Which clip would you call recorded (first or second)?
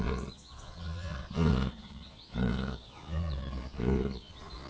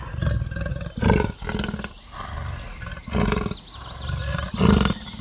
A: second